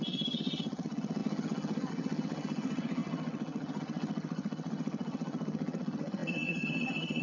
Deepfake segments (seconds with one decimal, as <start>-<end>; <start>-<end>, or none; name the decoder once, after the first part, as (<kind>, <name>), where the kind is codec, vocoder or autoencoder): 0.0-7.2 (vocoder, HiFi-GAN)